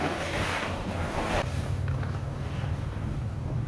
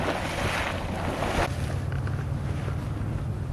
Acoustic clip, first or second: second